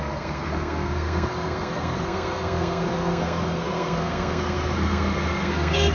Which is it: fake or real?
fake